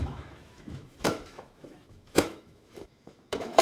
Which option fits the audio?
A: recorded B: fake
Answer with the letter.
B